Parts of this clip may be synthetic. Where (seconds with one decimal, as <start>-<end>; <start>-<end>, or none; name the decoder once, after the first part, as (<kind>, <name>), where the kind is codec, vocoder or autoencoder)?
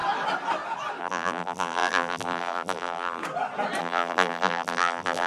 1.0-3.2 (vocoder, BigVGAN v2); 3.8-5.3